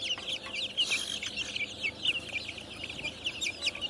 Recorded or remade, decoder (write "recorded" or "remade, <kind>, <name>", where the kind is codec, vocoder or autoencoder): recorded